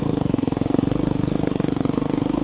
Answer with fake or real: fake